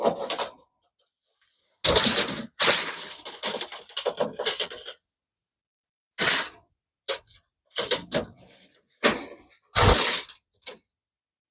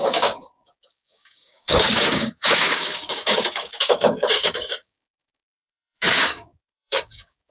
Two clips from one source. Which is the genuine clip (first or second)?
first